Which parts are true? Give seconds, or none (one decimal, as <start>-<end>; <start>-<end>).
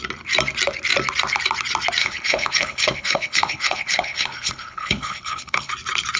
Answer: 0.0-2.0; 5.7-6.2